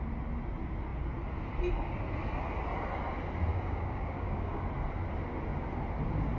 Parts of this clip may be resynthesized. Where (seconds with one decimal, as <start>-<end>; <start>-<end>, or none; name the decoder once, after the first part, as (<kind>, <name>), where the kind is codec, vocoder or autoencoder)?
3.5-4.6 (codec, DAC)